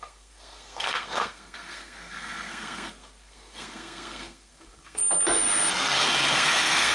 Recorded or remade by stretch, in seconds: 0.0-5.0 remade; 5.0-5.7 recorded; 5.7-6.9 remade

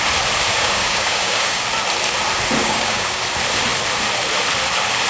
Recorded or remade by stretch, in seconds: 0.0-0.5 recorded; 0.5-1.6 remade; 1.6-2.6 recorded; 2.6-3.2 remade; 3.2-5.1 recorded

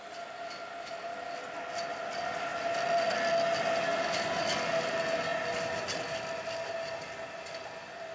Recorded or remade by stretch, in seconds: 0.0-8.1 recorded

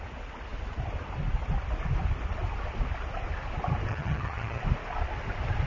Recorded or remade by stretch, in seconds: 0.0-3.9 recorded; 3.9-4.6 remade; 4.6-5.7 recorded

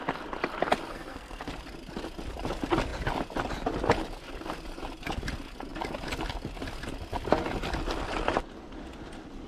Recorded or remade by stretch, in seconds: 0.0-0.9 recorded; 0.9-1.5 remade; 1.5-9.5 recorded

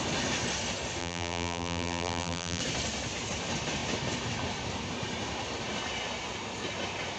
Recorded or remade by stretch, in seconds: 0.0-1.0 recorded; 1.0-2.6 remade; 2.6-7.2 recorded